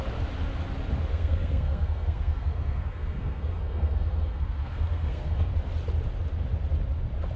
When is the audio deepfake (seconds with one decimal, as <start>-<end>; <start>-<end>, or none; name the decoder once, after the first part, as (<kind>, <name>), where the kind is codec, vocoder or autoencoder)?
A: 1.1-5.5 (codec, SNAC)